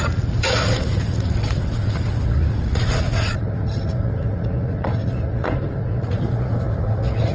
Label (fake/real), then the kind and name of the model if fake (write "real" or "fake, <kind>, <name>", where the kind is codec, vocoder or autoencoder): fake, vocoder, Vocos